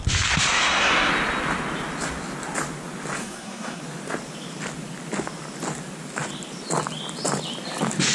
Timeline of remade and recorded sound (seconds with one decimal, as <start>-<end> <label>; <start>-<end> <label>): 0.0-0.5 recorded; 0.5-1.1 remade; 1.1-3.2 recorded; 3.2-3.8 remade; 3.8-8.1 recorded